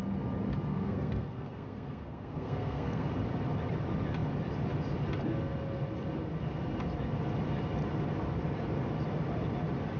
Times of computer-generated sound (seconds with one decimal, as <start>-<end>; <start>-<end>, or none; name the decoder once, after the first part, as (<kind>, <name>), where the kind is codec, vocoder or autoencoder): 0.7-3.1 (codec, SNAC)